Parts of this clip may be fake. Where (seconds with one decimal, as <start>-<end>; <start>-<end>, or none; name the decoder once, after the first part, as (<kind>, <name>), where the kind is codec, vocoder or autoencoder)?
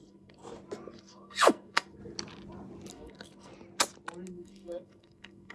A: 0.0-0.4 (codec, SNAC); 1.0-2.0; 2.9-3.5; 4.3-5.5